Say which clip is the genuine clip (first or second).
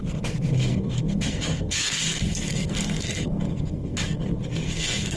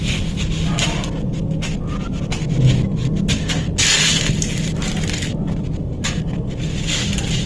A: second